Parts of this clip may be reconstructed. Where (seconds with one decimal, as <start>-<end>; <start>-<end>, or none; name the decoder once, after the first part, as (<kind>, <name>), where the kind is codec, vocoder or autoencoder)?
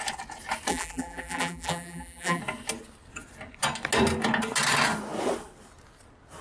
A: 0.7-2.4 (vocoder, BigVGAN v2)